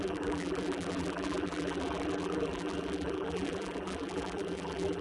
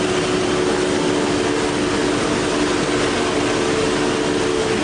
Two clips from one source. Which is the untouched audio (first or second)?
second